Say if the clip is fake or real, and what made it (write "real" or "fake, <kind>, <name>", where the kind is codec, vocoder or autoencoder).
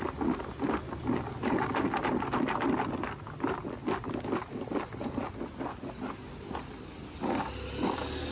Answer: real